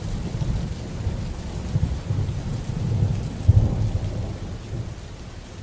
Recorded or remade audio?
recorded